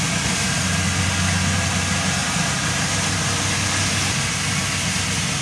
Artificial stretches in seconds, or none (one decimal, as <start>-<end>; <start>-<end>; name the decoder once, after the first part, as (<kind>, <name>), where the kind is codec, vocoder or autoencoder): none